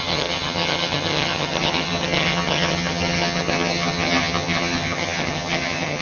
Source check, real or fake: fake